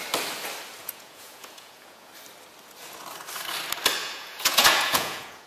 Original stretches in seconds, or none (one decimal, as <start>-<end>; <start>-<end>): 0.0-0.8; 2.1-4.0